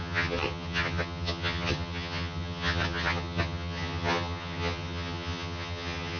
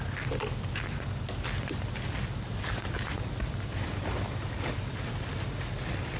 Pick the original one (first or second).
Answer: second